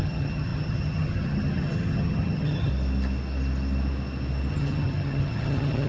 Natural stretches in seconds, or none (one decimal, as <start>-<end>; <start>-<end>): 2.7-4.5